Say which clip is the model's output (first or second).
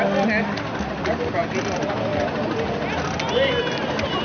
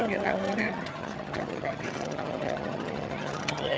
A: second